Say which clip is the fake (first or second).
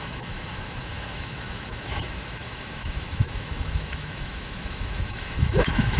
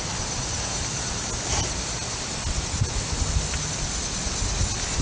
first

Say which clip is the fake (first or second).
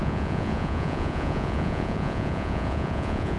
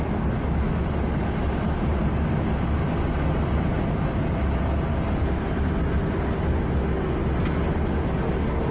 first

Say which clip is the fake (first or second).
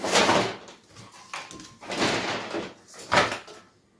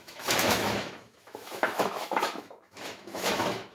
second